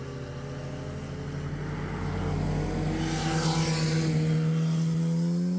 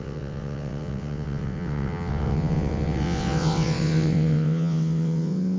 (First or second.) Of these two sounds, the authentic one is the first